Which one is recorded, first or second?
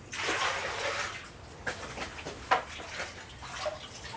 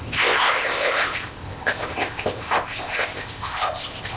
first